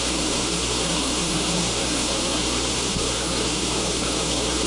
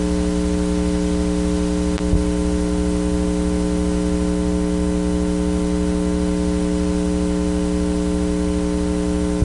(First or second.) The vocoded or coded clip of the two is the first